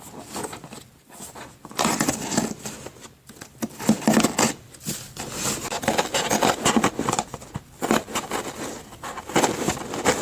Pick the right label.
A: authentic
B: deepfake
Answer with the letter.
A